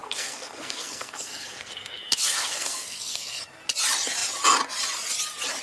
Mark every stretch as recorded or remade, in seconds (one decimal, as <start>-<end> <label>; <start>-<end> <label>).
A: 0.0-3.4 remade; 3.4-5.6 recorded